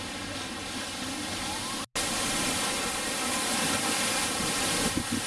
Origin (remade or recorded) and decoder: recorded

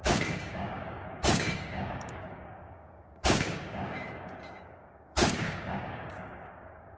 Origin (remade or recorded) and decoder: remade, codec, DAC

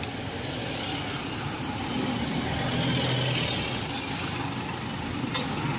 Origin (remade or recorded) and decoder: recorded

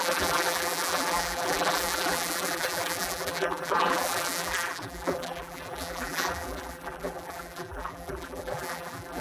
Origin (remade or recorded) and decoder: remade, vocoder, BigVGAN v2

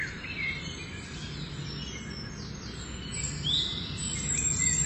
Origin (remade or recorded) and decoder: recorded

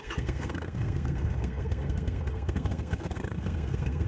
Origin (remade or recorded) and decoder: remade, codec, SNAC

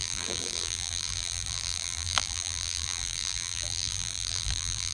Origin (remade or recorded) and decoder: remade, vocoder, BigVGAN v2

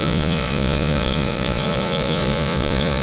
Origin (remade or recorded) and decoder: remade, vocoder, Vocos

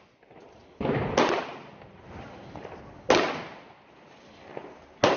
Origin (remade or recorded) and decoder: recorded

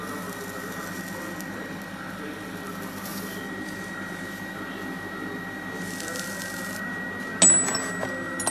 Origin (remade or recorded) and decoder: recorded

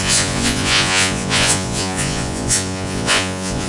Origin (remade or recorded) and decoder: remade, vocoder, Vocos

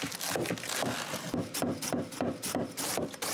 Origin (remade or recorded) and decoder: recorded